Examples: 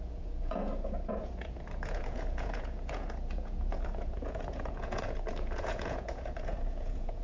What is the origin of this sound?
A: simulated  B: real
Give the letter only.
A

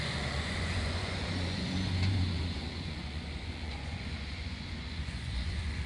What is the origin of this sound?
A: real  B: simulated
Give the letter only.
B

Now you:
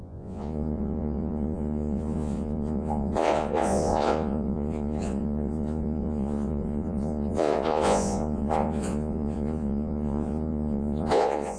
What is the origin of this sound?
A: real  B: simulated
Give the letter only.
B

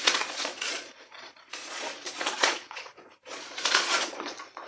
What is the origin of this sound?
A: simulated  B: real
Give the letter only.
A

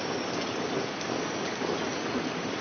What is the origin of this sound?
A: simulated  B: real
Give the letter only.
B